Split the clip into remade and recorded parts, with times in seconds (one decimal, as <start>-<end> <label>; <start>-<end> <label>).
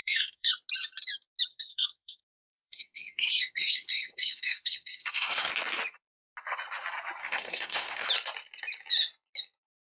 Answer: 0.0-0.5 remade; 0.5-1.5 recorded; 1.5-5.5 remade; 5.5-7.2 recorded; 7.2-8.1 remade; 8.1-9.8 recorded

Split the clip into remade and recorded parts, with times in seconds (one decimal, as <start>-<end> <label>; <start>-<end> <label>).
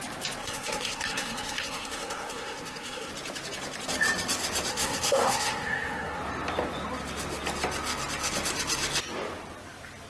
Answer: 0.0-0.4 recorded; 0.4-3.1 remade; 3.1-4.7 recorded; 4.7-6.2 remade; 6.2-10.1 recorded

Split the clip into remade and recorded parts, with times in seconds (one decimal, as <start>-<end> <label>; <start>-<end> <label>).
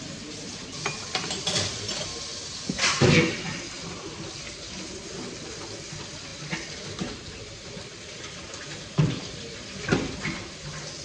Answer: 0.0-11.0 recorded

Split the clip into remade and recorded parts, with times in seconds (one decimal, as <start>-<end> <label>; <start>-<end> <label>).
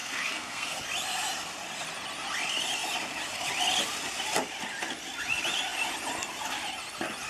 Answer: 0.0-0.8 remade; 0.8-7.3 recorded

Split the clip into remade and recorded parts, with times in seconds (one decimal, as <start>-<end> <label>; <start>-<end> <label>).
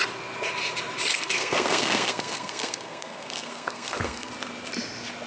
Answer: 0.0-1.1 recorded; 1.1-4.3 remade; 4.3-5.3 recorded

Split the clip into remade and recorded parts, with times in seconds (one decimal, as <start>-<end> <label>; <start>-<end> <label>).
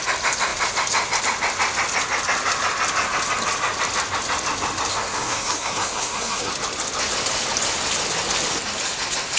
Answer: 0.0-4.9 recorded; 4.9-6.5 remade; 6.5-9.4 recorded